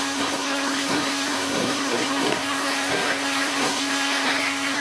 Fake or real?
fake